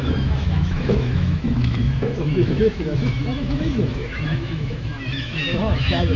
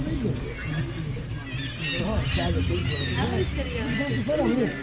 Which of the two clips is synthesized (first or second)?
first